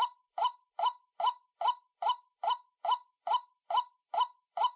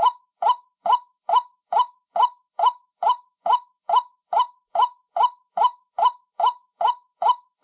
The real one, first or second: first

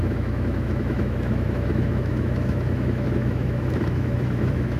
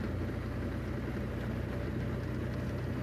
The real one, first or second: second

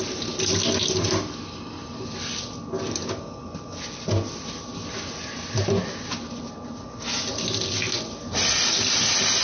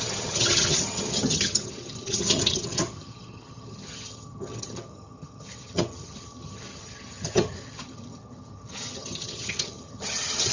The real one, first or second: first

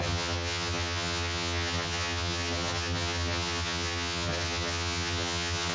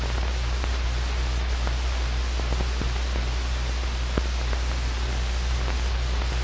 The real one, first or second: second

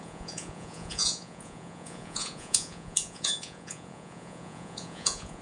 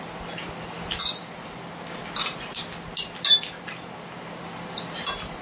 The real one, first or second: second